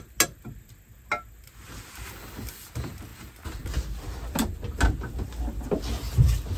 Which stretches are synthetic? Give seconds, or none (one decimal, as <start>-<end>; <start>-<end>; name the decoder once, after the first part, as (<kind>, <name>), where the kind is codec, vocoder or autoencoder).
none